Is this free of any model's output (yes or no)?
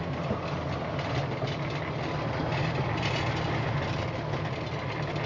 yes